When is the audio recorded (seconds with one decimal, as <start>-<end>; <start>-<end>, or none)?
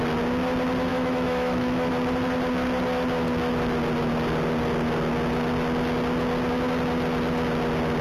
0.0-0.9; 1.9-8.0